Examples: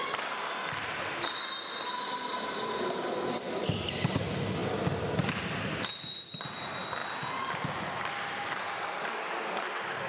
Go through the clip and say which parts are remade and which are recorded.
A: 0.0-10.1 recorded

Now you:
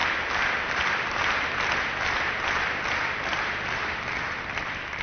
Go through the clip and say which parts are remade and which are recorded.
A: 0.0-5.0 recorded

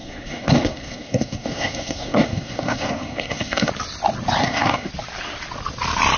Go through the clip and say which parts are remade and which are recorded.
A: 0.0-3.7 remade; 3.7-4.4 recorded; 4.4-4.9 remade; 4.9-6.2 recorded

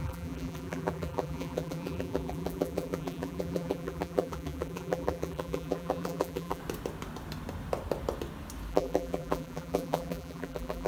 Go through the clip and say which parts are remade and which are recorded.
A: 0.0-6.6 remade; 6.6-8.7 recorded; 8.7-10.9 remade

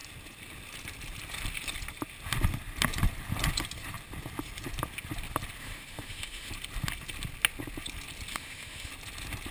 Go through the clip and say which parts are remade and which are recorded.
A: 0.0-5.6 recorded; 5.6-6.5 remade; 6.5-8.3 recorded; 8.3-8.9 remade; 8.9-9.5 recorded